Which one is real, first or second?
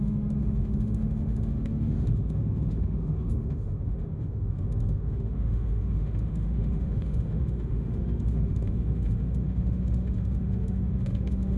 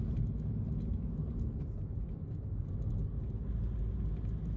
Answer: second